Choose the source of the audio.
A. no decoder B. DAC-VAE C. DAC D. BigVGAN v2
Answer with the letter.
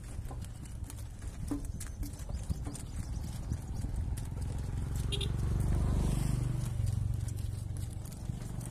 A